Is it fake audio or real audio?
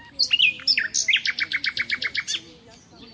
real